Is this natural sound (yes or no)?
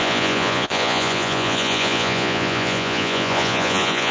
no